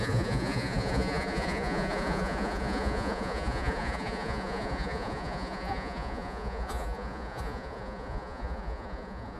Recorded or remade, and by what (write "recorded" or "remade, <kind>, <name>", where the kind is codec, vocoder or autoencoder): remade, vocoder, Vocos